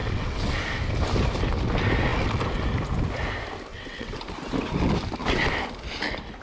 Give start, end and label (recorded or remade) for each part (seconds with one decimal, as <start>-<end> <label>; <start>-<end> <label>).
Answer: 0.0-0.5 remade; 0.5-3.7 recorded; 3.7-4.2 remade; 4.2-6.4 recorded